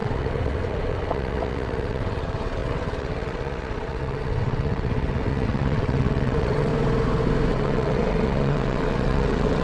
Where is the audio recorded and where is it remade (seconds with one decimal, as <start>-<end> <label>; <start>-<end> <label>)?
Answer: 0.0-6.7 remade; 6.7-7.5 recorded; 7.5-9.6 remade

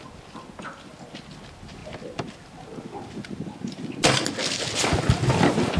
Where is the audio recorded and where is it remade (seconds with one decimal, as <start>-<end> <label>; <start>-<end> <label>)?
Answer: 0.0-5.8 recorded

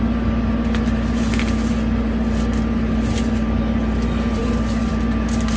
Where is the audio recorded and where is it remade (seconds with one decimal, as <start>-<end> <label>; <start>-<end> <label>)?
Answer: 0.0-5.6 recorded

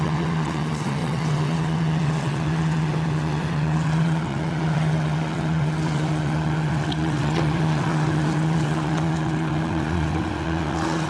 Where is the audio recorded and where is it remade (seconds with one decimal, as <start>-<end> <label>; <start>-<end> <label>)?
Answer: 0.0-11.1 remade

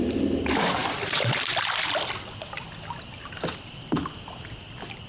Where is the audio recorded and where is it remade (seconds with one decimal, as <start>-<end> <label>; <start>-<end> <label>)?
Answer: 0.0-5.1 recorded

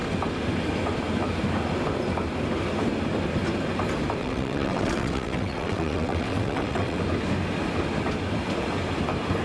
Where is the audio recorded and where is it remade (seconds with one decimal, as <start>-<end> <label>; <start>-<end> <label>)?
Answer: 0.0-4.2 recorded; 4.2-7.0 remade; 7.0-9.4 recorded